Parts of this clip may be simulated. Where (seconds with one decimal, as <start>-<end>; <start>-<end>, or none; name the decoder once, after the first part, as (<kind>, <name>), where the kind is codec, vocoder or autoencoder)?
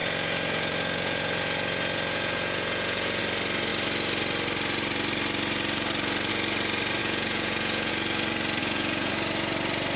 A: 0.0-3.2 (vocoder, Vocos); 7.0-7.9; 8.6-9.1